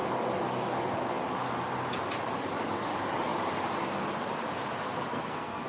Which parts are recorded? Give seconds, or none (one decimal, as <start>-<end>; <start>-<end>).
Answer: 0.0-5.1

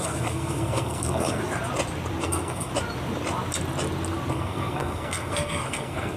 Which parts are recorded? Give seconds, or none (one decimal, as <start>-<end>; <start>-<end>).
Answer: 1.4-2.2; 2.7-4.3

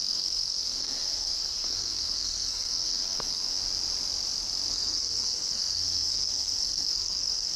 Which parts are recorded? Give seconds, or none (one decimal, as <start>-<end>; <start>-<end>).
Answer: 3.6-4.7

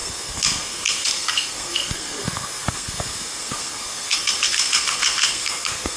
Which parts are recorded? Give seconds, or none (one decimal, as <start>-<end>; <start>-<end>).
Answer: none

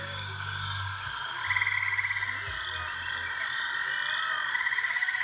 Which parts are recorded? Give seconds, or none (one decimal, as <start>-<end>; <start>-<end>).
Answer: 1.4-4.5

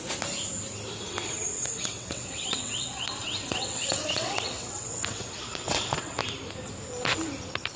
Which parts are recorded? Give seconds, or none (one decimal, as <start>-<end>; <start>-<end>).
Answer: 0.0-1.5; 6.2-7.8

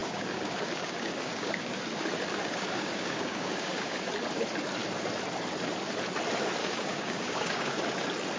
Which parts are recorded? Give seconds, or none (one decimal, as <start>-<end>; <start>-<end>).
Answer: 1.8-2.4; 4.1-6.6; 7.8-8.4